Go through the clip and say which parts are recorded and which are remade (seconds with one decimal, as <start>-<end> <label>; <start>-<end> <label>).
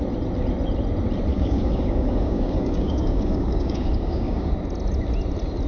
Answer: 0.0-1.3 recorded; 1.3-4.5 remade; 4.5-5.7 recorded